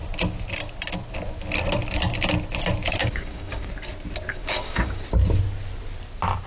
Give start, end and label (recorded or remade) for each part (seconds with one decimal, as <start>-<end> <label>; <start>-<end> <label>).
0.0-3.0 recorded; 3.0-3.7 remade; 3.7-4.3 recorded; 4.3-5.0 remade; 5.0-6.5 recorded